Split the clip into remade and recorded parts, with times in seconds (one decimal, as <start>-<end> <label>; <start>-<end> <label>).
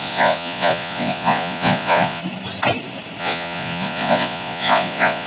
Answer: 0.0-2.2 remade; 2.2-3.2 recorded; 3.2-5.3 remade